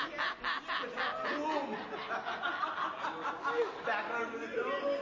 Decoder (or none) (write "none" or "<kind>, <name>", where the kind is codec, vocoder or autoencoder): none